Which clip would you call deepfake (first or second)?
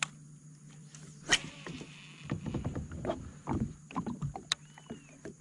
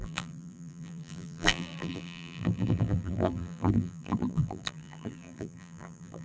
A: second